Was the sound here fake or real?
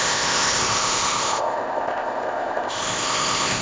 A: fake